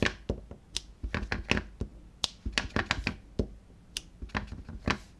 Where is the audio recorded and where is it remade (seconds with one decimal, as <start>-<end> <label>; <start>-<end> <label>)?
0.0-5.2 recorded

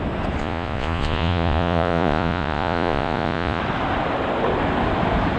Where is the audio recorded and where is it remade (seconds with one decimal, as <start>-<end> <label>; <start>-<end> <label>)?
0.0-0.4 recorded; 0.4-3.6 remade; 3.6-5.4 recorded

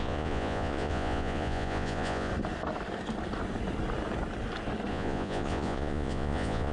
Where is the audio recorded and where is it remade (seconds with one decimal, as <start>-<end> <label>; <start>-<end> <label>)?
0.0-2.3 remade; 2.3-4.9 recorded; 4.9-6.7 remade

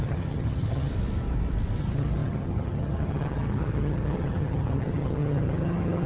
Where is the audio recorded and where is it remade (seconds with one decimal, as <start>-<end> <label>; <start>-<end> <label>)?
0.0-0.9 remade; 0.9-1.8 recorded; 1.8-6.1 remade

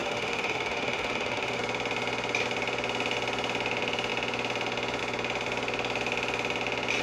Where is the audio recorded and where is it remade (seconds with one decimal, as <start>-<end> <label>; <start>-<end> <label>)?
0.0-1.6 remade; 1.6-7.0 recorded

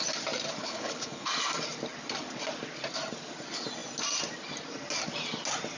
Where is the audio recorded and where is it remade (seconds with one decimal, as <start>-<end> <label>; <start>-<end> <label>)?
0.0-0.6 recorded; 0.6-1.3 remade; 1.3-5.8 recorded

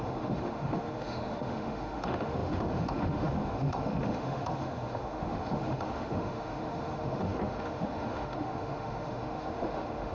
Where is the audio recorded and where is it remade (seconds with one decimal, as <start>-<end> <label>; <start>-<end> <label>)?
0.0-10.1 remade